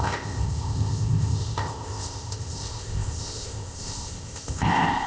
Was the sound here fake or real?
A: fake